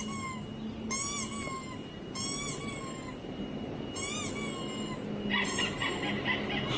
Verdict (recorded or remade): recorded